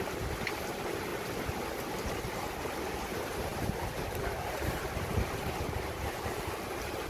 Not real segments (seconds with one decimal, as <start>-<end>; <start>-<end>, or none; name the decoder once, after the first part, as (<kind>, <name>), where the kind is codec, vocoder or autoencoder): 0.0-1.1 (vocoder, BigVGAN v2); 2.0-7.1